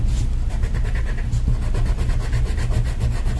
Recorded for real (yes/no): yes